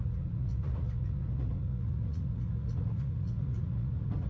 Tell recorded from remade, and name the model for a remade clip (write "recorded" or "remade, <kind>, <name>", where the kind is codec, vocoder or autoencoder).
remade, vocoder, Vocos